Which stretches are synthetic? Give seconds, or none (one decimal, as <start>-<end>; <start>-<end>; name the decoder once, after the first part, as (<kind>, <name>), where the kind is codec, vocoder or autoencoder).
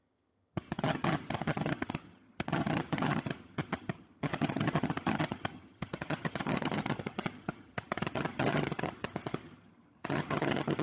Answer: 0.0-10.8 (vocoder, HiFi-GAN)